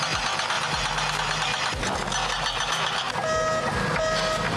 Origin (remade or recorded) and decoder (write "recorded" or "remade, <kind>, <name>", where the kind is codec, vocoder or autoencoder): recorded